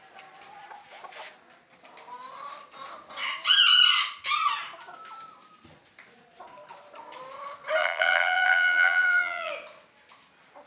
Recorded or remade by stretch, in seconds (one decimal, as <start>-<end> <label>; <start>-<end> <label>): 0.0-7.8 recorded; 7.8-9.5 remade; 9.5-10.7 recorded